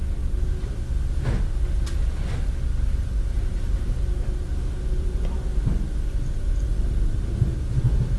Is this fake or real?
real